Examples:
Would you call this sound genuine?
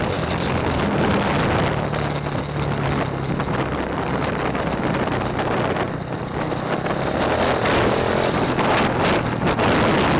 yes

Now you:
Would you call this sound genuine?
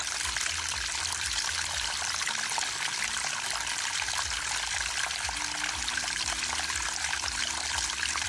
yes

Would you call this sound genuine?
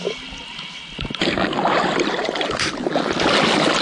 yes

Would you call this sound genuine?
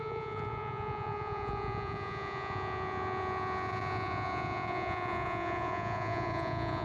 no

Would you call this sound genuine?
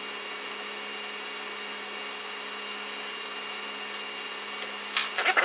yes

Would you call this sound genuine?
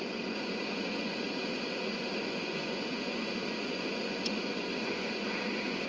no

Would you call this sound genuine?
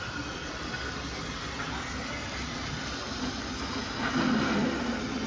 yes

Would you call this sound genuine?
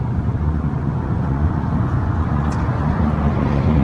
no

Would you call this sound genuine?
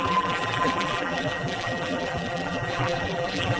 no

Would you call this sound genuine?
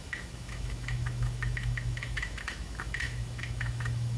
no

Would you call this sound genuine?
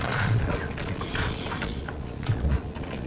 no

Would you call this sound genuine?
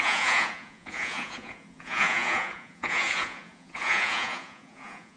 no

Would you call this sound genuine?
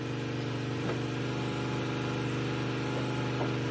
yes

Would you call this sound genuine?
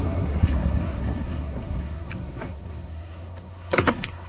no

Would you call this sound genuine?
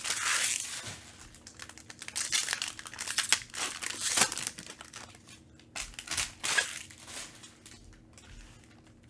yes